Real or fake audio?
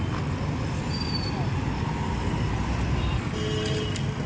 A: real